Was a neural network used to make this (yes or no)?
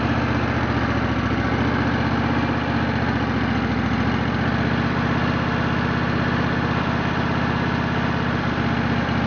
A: no